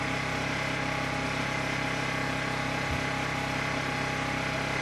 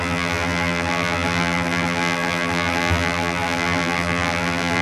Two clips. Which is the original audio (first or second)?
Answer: first